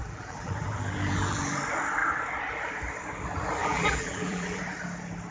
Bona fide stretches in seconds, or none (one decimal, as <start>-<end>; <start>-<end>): 1.6-3.6; 4.6-5.3